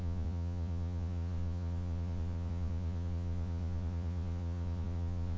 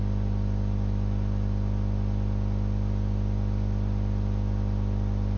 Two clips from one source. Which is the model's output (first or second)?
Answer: first